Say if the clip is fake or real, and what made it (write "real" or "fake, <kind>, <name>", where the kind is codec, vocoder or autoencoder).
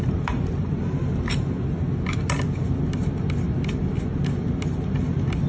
real